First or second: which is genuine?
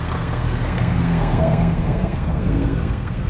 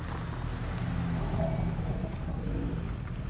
second